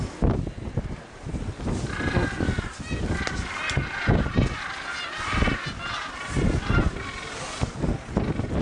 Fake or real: real